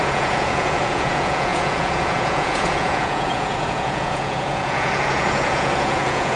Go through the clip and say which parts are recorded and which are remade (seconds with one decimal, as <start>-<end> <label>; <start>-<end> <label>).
0.0-6.4 remade